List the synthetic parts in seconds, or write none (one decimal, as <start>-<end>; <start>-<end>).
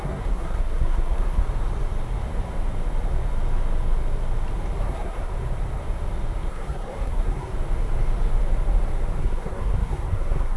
0.0-1.4; 4.8-5.3; 6.5-7.5; 9.2-10.6